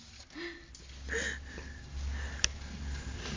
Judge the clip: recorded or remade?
recorded